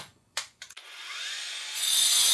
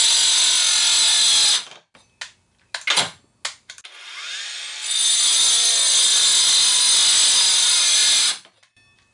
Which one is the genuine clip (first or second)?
second